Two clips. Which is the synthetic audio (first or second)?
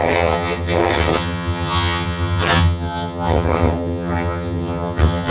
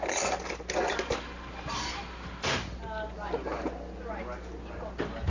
first